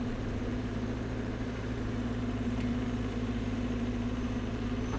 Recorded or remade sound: remade